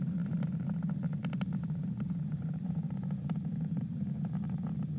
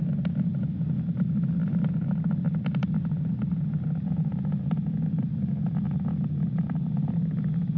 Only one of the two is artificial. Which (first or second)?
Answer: first